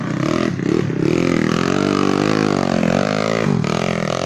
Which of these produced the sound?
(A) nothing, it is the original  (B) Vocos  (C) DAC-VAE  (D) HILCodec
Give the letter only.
A